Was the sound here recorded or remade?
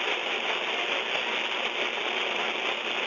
recorded